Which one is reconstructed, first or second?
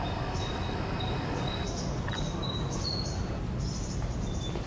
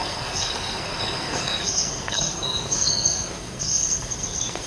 second